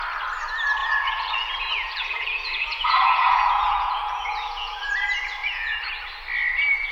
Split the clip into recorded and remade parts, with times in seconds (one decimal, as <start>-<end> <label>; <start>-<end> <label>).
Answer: 0.0-0.8 recorded; 0.8-4.9 remade; 4.9-5.4 recorded; 5.4-5.9 remade; 5.9-6.9 recorded